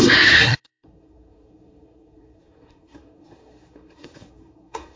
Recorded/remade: remade